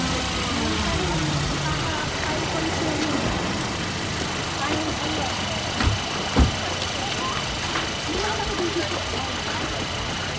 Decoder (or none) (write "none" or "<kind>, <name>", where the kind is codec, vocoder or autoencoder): none